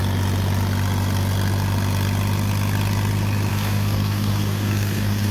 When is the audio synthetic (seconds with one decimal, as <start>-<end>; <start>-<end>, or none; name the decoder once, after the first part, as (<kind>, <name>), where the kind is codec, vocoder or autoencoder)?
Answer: 3.5-5.3 (codec, DAC)